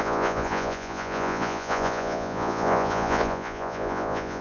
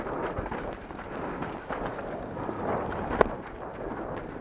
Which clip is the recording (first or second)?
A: second